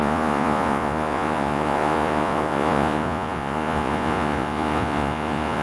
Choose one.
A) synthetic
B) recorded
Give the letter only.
A